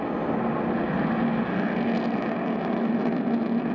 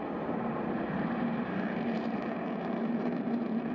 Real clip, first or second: first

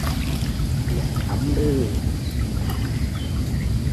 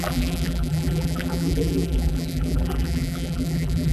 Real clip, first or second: first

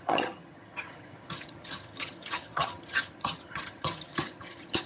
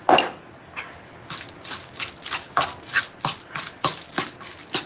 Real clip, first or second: second